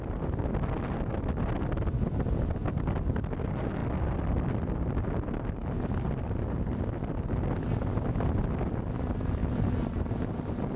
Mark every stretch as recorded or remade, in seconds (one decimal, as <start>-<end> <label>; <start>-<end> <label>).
0.0-10.8 recorded